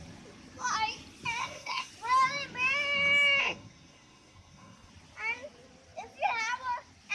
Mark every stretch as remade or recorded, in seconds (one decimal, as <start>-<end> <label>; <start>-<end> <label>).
0.0-1.4 recorded; 1.4-1.9 remade; 1.9-3.4 recorded; 3.4-4.9 remade; 4.9-7.1 recorded